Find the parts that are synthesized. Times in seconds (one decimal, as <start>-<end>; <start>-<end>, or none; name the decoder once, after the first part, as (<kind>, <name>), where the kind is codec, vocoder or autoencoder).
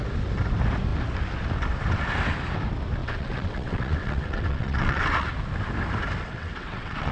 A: 3.0-5.3 (vocoder, WaveNeXt); 6.3-7.1